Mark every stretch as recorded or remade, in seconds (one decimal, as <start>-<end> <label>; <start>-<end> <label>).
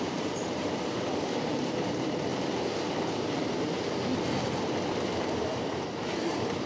0.0-2.3 remade; 2.3-5.2 recorded; 5.2-6.7 remade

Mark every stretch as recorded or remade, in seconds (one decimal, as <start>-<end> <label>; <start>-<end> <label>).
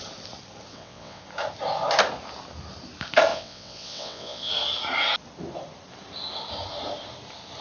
0.0-0.7 recorded; 0.7-1.2 remade; 1.2-3.3 recorded; 3.3-4.5 remade; 4.5-7.6 recorded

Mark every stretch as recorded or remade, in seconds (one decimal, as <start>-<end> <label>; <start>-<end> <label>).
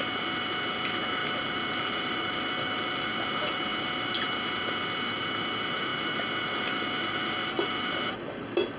0.0-1.2 recorded; 1.2-3.1 remade; 3.1-8.8 recorded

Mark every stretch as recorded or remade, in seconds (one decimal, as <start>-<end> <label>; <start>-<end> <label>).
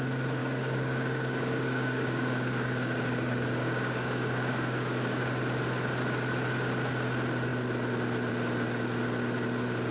0.0-0.4 recorded; 0.4-5.2 remade; 5.2-9.9 recorded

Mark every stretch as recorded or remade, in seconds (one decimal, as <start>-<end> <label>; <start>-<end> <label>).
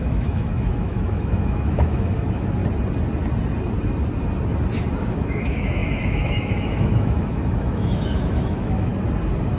0.0-2.6 remade; 2.6-5.1 recorded; 5.1-8.9 remade; 8.9-9.6 recorded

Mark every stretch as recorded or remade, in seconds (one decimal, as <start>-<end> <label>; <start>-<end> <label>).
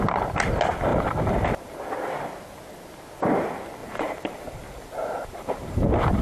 0.0-0.9 recorded; 0.9-1.8 remade; 1.8-3.8 recorded; 3.8-6.2 remade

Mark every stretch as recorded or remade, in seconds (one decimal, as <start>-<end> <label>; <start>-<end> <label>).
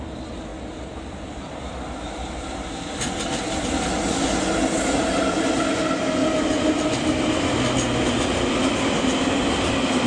0.0-0.5 recorded; 0.5-2.9 remade; 2.9-6.2 recorded; 6.2-7.3 remade; 7.3-10.1 recorded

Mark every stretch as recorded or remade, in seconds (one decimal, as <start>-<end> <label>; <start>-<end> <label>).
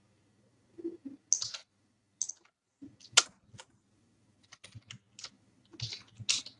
0.0-6.6 recorded